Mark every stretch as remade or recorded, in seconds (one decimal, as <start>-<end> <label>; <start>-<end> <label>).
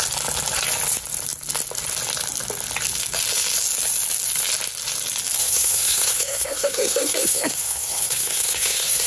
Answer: 0.0-5.4 recorded; 5.4-9.1 remade